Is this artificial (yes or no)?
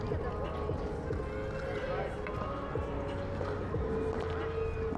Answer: no